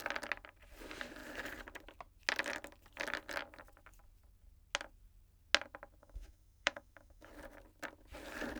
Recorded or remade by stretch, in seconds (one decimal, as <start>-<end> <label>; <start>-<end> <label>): 0.0-6.0 recorded; 6.0-7.3 remade; 7.3-8.6 recorded